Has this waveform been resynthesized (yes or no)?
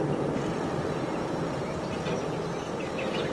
no